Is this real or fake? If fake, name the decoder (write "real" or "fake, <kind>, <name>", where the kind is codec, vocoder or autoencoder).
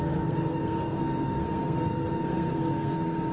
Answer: fake, codec, SNAC